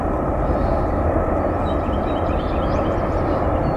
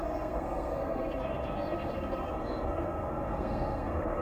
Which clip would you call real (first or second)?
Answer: first